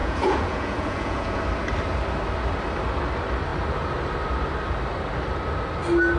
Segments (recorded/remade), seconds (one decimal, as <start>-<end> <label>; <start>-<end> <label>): 0.0-1.4 remade; 1.4-6.2 recorded